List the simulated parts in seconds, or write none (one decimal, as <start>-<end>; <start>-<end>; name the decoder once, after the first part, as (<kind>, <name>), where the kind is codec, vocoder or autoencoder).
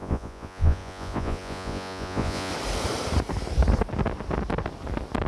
0.0-2.5 (vocoder, Vocos)